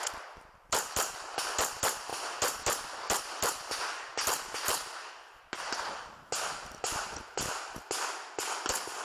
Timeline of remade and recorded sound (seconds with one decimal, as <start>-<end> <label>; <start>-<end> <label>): 0.0-9.0 recorded

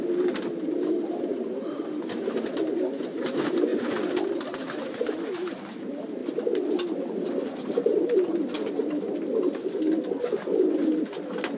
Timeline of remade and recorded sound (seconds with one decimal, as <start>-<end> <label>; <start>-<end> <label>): 0.0-3.7 recorded; 3.7-4.4 remade; 4.4-7.6 recorded; 7.6-9.3 remade; 9.3-11.6 recorded

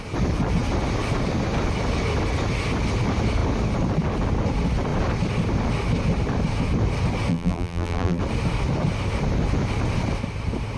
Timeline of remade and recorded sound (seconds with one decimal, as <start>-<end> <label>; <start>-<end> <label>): 0.0-7.3 recorded; 7.3-8.2 remade; 8.2-10.8 recorded

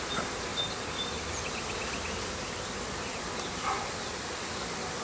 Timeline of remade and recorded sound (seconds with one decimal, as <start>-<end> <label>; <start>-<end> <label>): 0.0-5.0 remade

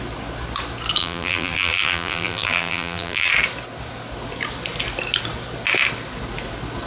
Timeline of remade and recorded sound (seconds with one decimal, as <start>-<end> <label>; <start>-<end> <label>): 0.0-1.0 recorded; 1.0-3.3 remade; 3.3-6.9 recorded

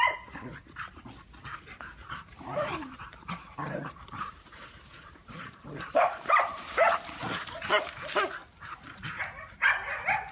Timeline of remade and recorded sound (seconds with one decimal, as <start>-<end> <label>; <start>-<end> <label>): 0.0-2.0 recorded; 2.0-6.9 remade; 6.9-10.3 recorded

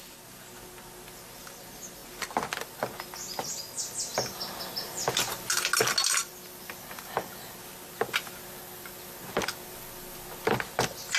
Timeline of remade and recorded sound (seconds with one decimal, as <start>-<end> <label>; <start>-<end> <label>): 0.0-11.2 recorded